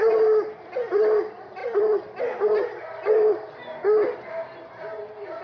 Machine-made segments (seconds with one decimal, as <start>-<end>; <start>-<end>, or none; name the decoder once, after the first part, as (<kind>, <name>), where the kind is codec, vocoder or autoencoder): none